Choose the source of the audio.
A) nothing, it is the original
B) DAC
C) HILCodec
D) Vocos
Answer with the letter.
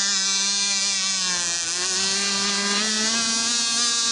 A